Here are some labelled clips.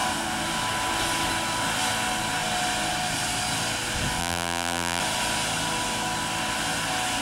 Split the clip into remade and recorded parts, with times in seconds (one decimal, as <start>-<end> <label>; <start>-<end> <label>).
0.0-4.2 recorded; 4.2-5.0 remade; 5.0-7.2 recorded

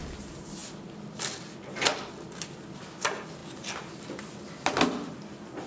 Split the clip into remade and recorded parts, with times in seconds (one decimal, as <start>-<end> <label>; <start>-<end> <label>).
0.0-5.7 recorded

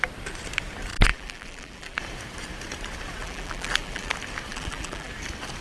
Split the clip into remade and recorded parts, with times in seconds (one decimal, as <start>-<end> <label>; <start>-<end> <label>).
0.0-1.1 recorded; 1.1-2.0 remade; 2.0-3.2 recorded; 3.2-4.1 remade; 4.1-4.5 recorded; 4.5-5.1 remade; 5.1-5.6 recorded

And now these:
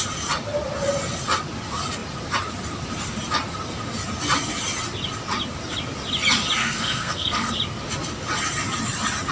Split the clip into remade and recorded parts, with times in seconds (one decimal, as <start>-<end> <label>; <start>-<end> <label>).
0.0-6.6 recorded; 6.6-7.5 remade; 7.5-9.3 recorded

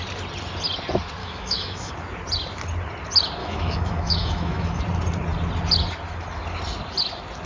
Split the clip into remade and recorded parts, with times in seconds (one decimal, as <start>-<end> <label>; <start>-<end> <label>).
0.0-1.2 recorded; 1.2-1.9 remade; 1.9-3.4 recorded; 3.4-4.8 remade; 4.8-7.5 recorded

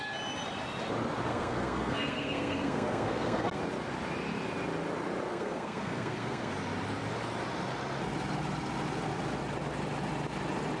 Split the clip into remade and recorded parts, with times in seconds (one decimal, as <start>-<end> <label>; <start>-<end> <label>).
0.0-1.3 recorded; 1.3-3.6 remade; 3.6-5.3 recorded; 5.3-6.5 remade; 6.5-10.8 recorded